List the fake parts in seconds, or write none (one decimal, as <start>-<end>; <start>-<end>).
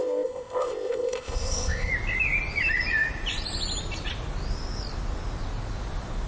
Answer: 0.0-1.9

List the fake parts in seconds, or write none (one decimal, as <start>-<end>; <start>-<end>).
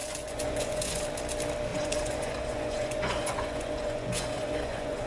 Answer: 0.0-1.0; 1.7-5.1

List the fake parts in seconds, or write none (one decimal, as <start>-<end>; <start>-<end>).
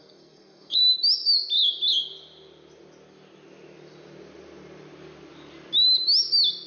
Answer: 0.0-0.8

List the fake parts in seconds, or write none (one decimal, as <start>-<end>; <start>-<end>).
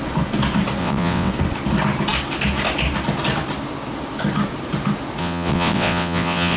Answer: 0.8-1.3; 5.2-6.6